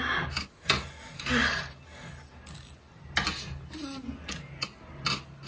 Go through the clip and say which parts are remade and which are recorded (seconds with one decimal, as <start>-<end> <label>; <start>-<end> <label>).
0.0-5.5 recorded